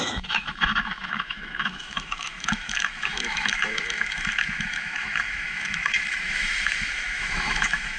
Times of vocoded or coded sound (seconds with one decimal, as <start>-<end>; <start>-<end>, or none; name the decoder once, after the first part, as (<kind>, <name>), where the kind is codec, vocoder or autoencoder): 0.0-8.0 (autoencoder, DAC-VAE)